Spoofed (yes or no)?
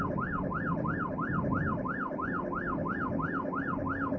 no